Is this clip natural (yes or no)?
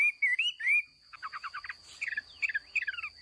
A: yes